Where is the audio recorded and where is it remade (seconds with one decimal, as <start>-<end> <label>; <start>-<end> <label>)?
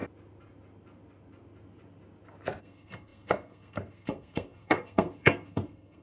0.0-2.6 recorded; 2.6-6.0 remade